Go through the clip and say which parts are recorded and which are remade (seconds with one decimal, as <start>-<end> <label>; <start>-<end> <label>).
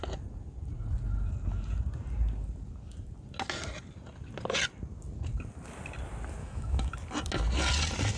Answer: 0.0-6.4 recorded; 6.4-6.9 remade; 6.9-8.2 recorded